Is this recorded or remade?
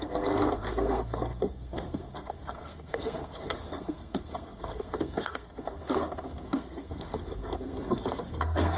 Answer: remade